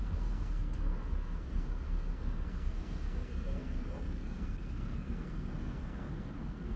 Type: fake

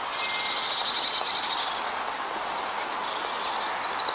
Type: real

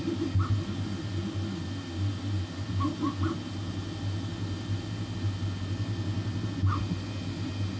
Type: real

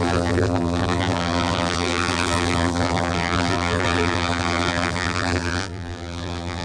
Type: fake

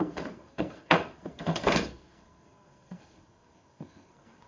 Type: fake